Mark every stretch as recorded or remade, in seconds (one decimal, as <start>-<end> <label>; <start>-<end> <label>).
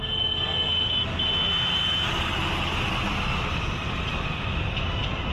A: 0.0-5.3 recorded